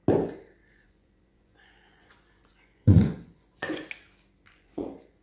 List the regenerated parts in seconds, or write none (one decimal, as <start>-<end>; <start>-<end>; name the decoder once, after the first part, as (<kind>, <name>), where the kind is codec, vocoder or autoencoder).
0.6-3.8 (vocoder, Vocos); 4.5-5.2